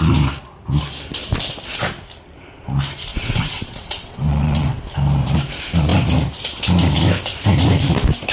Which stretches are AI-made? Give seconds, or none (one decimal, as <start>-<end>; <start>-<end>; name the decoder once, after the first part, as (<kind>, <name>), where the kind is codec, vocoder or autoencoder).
3.1-4.8 (vocoder, WaveNeXt)

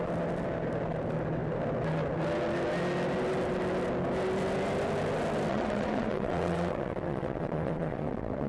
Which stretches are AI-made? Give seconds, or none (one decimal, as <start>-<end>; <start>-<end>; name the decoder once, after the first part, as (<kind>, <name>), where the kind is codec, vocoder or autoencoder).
5.5-8.5 (vocoder, WaveNeXt)